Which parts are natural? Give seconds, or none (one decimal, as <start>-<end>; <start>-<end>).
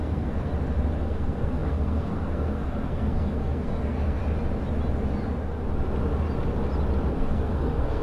0.5-1.0; 4.2-7.1